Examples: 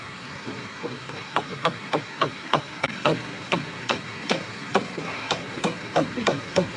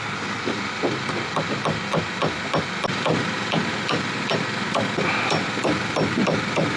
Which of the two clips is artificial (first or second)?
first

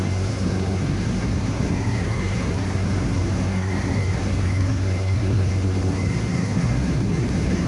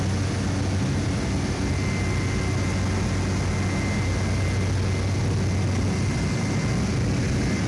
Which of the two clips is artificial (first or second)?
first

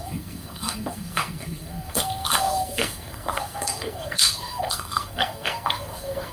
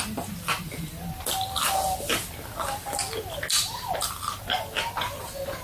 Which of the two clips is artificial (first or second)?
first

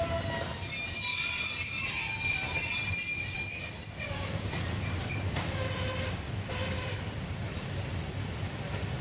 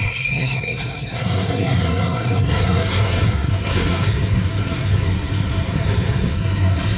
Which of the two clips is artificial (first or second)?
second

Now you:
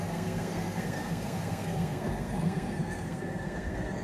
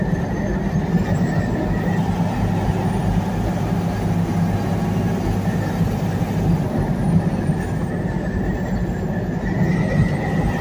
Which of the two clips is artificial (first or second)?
first